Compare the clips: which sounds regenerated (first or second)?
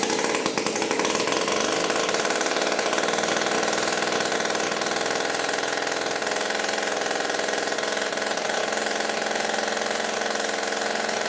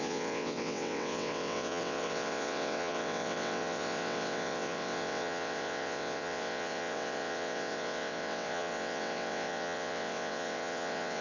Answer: second